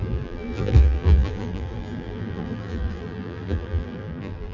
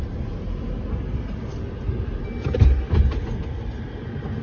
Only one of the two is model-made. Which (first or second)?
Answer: first